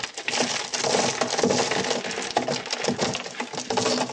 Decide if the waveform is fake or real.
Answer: real